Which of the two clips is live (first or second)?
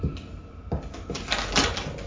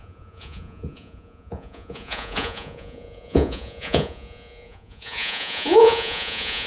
first